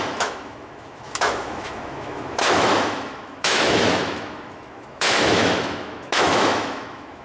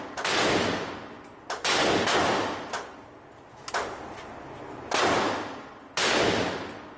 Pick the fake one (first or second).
first